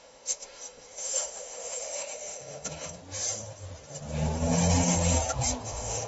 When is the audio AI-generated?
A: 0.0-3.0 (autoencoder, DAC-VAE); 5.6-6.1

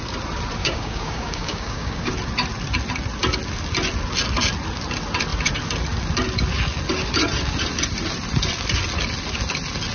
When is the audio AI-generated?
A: 0.6-2.1 (codec, DAC)